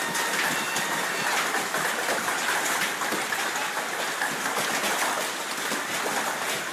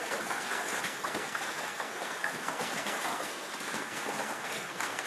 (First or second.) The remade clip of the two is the second